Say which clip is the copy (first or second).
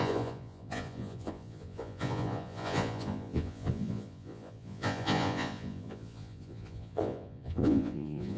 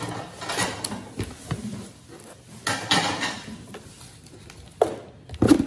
first